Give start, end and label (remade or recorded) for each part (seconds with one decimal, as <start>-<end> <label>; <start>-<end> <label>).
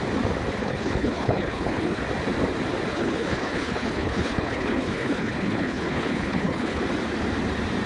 0.0-0.6 recorded; 0.6-2.0 remade; 2.0-2.9 recorded; 2.9-6.8 remade; 6.8-7.9 recorded